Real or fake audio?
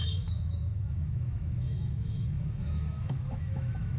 fake